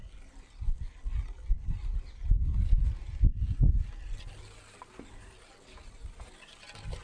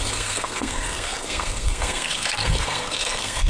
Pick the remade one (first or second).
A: second